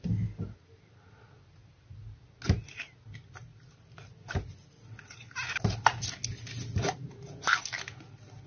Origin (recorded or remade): recorded